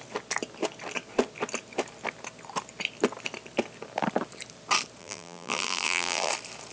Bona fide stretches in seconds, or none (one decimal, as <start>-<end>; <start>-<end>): 0.0-5.0; 6.3-6.7

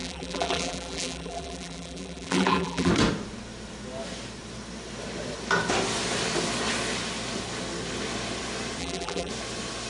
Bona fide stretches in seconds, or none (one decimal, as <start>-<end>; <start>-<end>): 2.9-8.8; 9.3-9.9

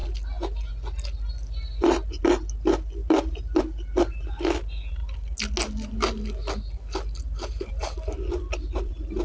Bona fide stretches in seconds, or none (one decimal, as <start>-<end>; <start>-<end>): 0.0-9.2

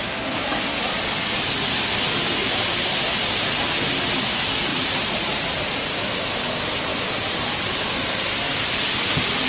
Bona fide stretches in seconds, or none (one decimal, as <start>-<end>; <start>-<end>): 0.0-2.4; 3.9-4.7; 5.9-9.5